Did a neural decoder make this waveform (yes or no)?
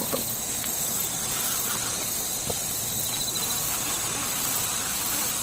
no